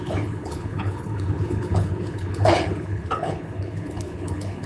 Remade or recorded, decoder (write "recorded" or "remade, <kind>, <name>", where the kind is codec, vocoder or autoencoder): remade, codec, HILCodec